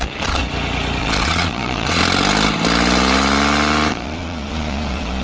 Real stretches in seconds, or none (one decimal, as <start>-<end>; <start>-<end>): 0.4-1.0; 2.0-3.9